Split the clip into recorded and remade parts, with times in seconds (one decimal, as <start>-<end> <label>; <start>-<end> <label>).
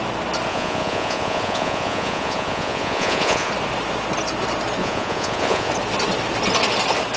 0.0-0.5 recorded; 0.5-3.5 remade; 3.5-4.8 recorded; 4.8-5.7 remade; 5.7-7.2 recorded